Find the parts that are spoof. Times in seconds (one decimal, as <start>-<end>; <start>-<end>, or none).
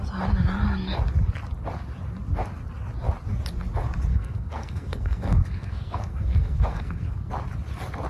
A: 4.1-7.3